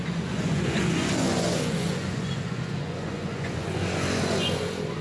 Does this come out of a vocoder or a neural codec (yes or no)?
yes